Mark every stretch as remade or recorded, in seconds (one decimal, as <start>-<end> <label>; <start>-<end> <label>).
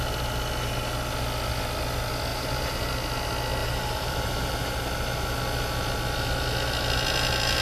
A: 0.0-2.3 recorded; 2.3-2.9 remade; 2.9-3.6 recorded; 3.6-4.8 remade; 4.8-7.6 recorded